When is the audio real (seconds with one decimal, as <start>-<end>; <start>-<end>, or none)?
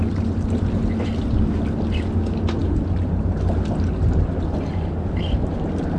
0.0-6.0